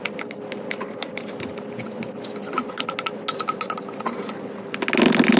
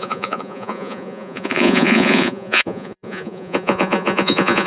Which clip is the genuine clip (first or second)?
first